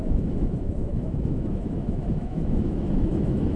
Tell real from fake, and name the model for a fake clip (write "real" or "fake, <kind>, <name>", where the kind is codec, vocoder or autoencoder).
fake, autoencoder, DAC-VAE